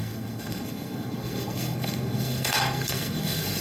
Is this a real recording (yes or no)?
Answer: no